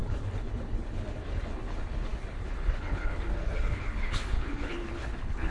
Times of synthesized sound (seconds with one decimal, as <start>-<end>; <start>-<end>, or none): 0.0-5.5